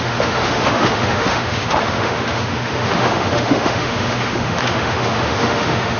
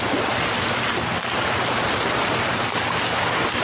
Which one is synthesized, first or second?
first